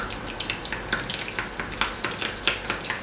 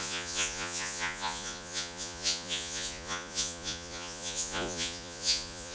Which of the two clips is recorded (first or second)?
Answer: first